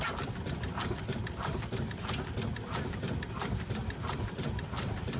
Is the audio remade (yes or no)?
no